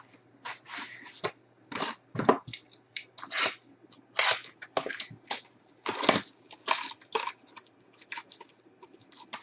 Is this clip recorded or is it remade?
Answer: recorded